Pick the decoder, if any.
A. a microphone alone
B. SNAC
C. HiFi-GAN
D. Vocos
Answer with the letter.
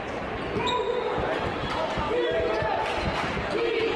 A